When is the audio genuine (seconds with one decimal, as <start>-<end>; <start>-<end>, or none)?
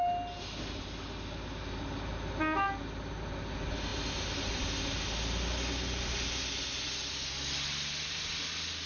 0.0-8.9